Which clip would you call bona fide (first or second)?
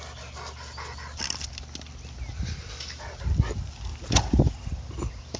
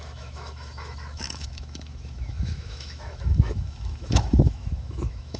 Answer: first